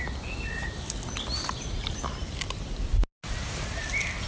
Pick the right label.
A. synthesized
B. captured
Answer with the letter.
B